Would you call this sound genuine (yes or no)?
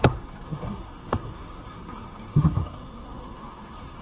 no